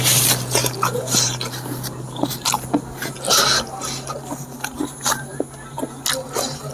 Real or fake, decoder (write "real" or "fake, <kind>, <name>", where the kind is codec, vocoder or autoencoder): real